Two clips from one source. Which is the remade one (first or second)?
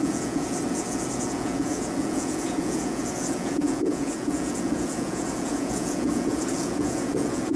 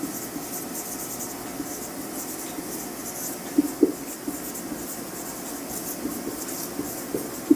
first